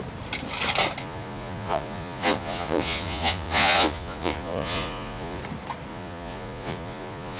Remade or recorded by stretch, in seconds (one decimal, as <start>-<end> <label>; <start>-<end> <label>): 0.0-1.0 recorded; 1.0-5.4 remade; 5.4-5.9 recorded; 5.9-7.4 remade